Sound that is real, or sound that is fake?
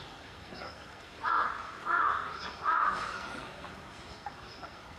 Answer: fake